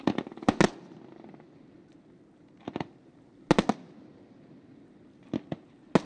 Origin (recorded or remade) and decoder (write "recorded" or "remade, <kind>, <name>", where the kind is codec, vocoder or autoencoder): recorded